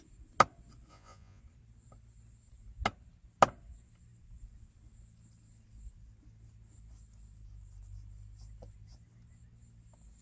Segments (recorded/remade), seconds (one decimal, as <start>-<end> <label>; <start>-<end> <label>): 0.0-0.9 recorded; 0.9-1.4 remade; 1.4-10.2 recorded